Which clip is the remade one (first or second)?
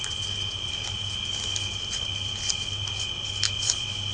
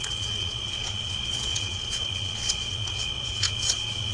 second